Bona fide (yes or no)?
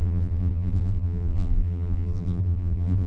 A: no